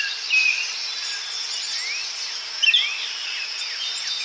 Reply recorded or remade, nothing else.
recorded